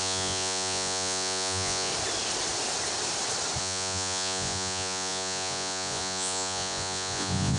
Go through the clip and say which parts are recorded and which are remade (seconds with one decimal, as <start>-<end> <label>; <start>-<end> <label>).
0.0-1.9 remade; 1.9-3.6 recorded; 3.6-7.6 remade